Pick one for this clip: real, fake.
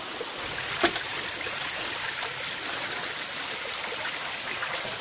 real